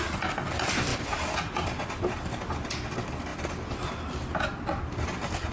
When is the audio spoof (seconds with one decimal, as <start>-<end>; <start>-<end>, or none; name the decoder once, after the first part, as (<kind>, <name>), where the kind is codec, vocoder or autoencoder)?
none